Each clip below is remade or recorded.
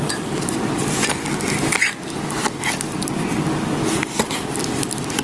recorded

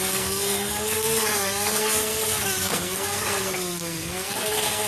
remade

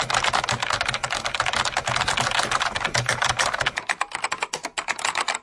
recorded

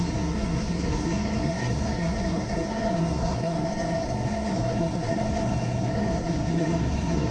remade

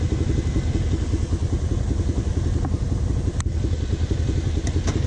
recorded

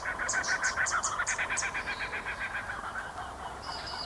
recorded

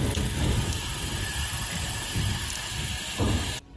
recorded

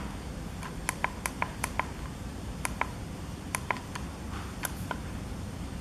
recorded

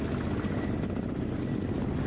recorded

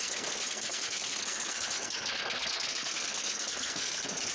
remade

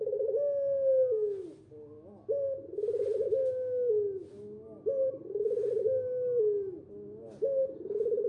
recorded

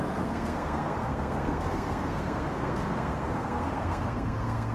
remade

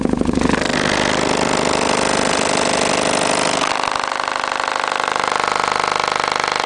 recorded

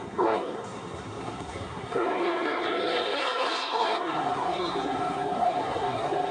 remade